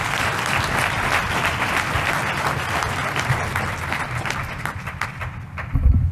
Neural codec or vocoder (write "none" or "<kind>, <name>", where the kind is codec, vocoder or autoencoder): none